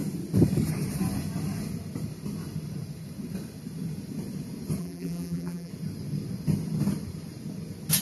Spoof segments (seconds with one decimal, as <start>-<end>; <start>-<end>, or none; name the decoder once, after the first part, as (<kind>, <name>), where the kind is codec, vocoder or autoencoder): 4.8-5.7 (vocoder, BigVGAN v2)